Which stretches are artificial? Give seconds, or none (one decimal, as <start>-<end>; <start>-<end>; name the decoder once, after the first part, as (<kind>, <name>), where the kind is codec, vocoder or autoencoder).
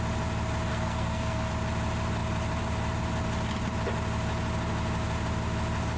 0.7-1.5 (codec, SNAC)